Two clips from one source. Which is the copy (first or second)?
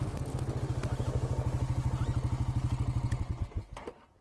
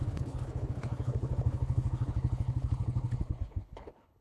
second